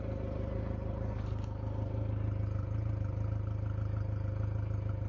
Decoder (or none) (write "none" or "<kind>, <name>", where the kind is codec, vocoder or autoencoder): none